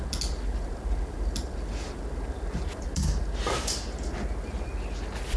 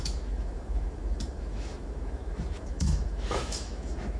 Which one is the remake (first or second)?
second